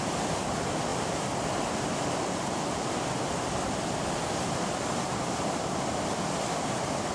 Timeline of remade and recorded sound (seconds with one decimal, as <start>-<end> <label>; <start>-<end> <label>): 0.0-7.1 recorded